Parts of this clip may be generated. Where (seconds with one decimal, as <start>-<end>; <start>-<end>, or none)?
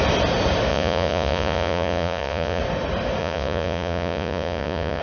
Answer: 0.7-2.6; 3.2-5.0